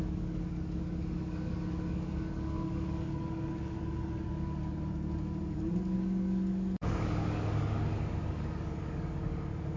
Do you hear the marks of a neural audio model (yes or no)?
yes